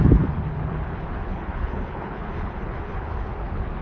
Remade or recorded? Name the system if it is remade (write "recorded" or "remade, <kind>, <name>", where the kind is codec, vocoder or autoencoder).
remade, codec, HILCodec